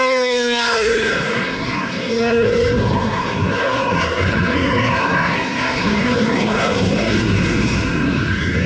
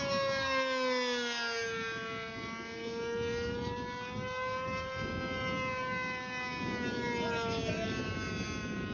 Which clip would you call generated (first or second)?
first